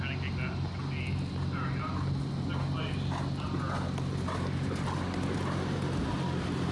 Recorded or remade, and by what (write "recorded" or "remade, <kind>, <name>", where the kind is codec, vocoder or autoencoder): recorded